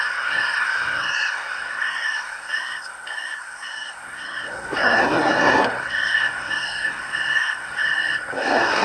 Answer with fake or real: fake